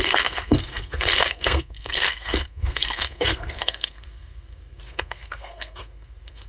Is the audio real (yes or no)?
no